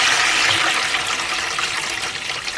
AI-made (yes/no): no